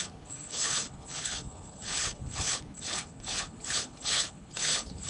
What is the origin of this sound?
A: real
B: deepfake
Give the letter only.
B